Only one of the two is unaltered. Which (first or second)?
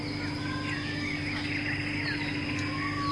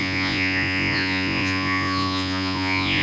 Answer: first